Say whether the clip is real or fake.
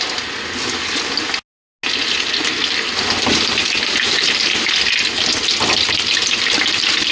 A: real